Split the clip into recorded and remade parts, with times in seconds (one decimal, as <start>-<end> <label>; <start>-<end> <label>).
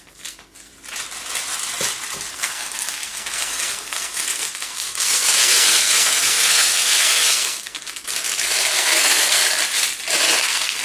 0.0-0.7 remade; 0.7-2.3 recorded; 2.3-9.4 remade; 9.4-10.4 recorded; 10.4-10.8 remade